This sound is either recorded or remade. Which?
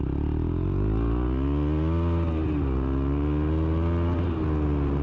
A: recorded